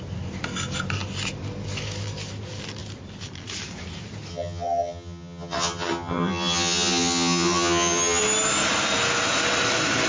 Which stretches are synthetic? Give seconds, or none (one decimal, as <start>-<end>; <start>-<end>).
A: 4.3-8.2